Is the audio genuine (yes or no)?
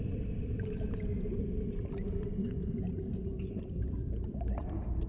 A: no